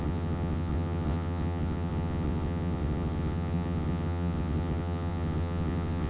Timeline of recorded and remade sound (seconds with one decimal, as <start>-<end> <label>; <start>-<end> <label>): 0.0-6.1 remade